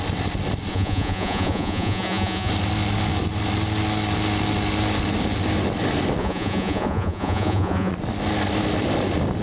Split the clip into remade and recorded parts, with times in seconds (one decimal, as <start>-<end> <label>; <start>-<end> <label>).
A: 0.0-0.7 recorded; 0.7-2.5 remade; 2.5-6.2 recorded; 6.2-7.9 remade; 7.9-9.4 recorded